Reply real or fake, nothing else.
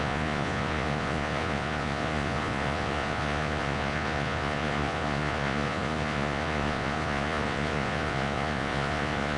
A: fake